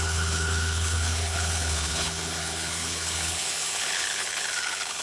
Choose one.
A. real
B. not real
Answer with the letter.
B